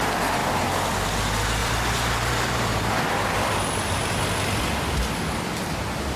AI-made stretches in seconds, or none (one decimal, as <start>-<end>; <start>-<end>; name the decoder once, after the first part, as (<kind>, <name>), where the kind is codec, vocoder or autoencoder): 1.6-2.9 (vocoder, BigVGAN v2)